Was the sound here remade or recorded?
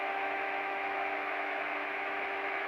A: remade